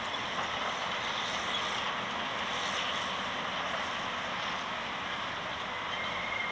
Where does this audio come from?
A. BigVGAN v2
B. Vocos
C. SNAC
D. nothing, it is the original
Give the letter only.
D